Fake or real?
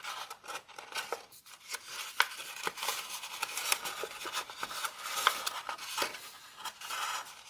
real